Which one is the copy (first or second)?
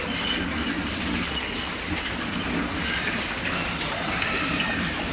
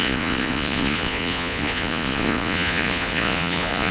second